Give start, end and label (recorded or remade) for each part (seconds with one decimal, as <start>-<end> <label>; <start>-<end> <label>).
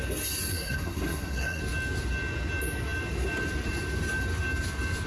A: 0.0-0.5 recorded; 0.5-1.6 remade; 1.6-5.1 recorded